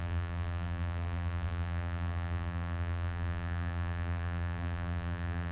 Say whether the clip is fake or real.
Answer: fake